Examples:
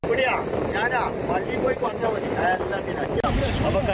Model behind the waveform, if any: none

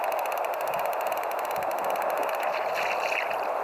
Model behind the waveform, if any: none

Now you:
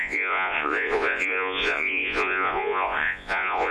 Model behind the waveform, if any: vocoder, Vocos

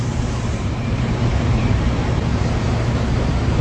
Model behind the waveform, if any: vocoder, BigVGAN v2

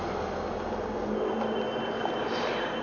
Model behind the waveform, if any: none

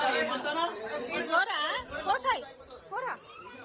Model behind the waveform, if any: vocoder, BigVGAN v2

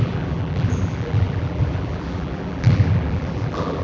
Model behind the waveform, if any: vocoder, BigVGAN v2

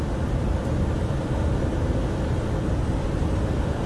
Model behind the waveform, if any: none